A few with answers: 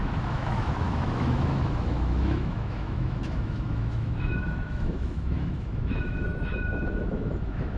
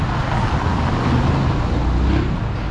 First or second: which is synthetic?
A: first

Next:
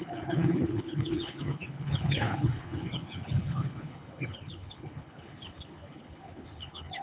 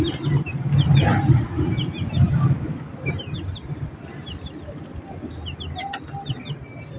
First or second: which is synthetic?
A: first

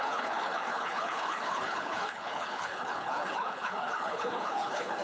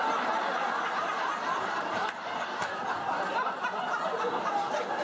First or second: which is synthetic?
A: first